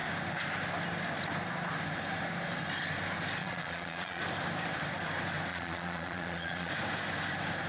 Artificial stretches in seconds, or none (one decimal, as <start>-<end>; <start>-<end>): 3.4-4.2; 5.5-6.7